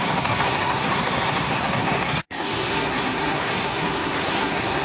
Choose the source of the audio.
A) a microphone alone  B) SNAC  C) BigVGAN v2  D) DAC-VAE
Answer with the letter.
B